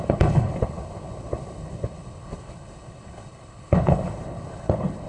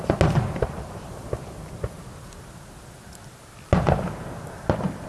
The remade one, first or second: first